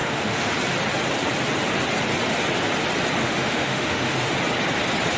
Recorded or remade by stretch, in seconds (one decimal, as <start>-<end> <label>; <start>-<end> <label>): 0.0-0.5 remade; 0.5-3.2 recorded; 3.2-4.3 remade; 4.3-5.2 recorded